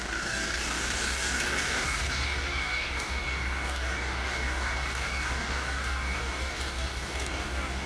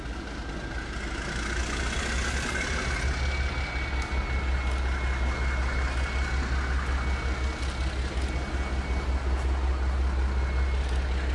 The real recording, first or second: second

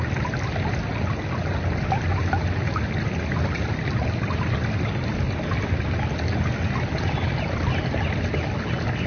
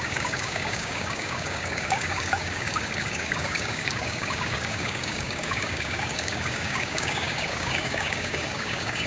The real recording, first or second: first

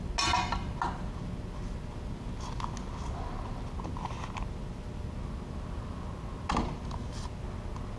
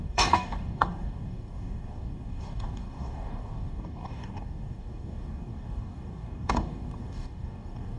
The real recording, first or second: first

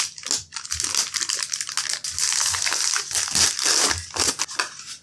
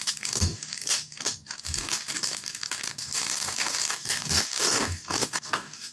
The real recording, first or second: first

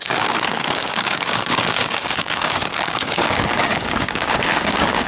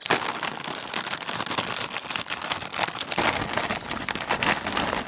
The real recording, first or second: second